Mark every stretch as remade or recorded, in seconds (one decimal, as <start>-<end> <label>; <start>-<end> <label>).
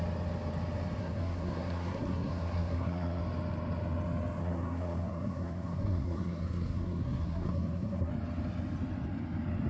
0.0-1.0 recorded; 1.0-3.2 remade; 3.2-4.4 recorded; 4.4-8.1 remade; 8.1-9.7 recorded